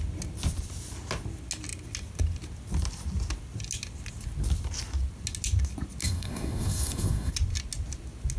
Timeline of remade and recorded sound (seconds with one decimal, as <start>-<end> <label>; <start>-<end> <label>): 0.0-6.0 recorded; 6.0-7.3 remade; 7.3-8.4 recorded